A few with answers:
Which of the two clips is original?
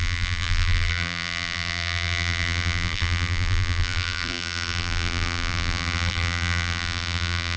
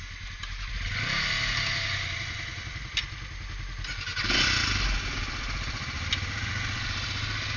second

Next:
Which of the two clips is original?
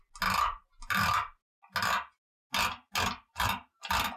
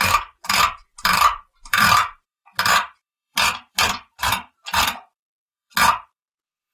first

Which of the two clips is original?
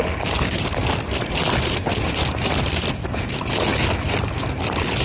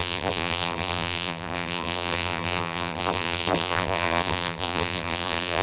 first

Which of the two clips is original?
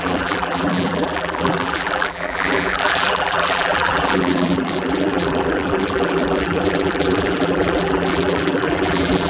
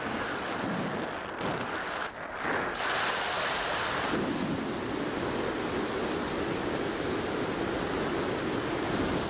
second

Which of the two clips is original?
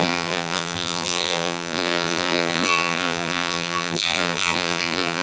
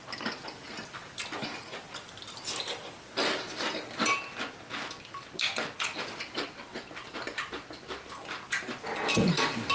second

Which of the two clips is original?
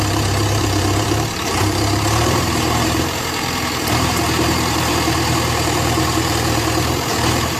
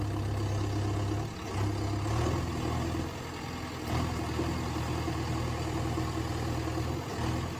second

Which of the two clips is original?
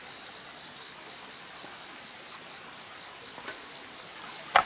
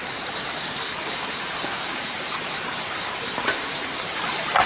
first